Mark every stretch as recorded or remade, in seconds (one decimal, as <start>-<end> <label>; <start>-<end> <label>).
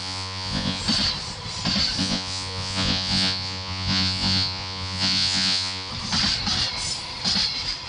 0.0-0.8 remade; 0.8-2.0 recorded; 2.0-5.9 remade; 5.9-7.9 recorded